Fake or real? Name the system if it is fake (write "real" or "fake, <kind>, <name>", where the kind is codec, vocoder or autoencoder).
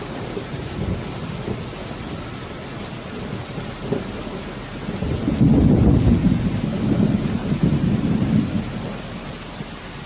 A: real